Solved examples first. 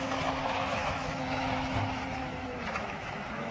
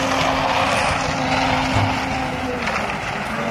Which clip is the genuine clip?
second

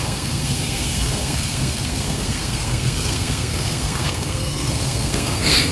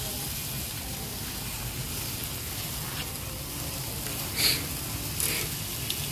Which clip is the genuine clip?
second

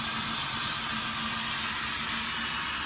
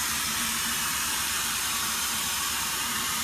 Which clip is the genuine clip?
first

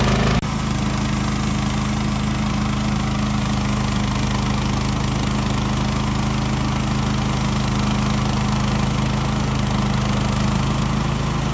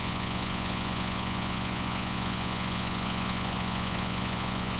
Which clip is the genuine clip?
first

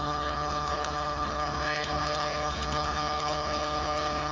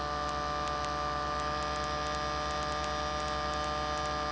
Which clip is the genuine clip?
second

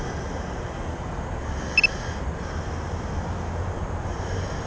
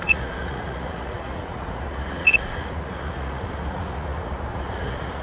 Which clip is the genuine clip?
first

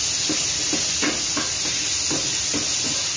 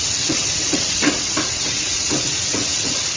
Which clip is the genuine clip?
first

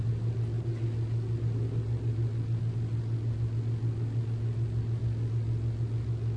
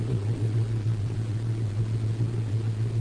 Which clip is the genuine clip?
first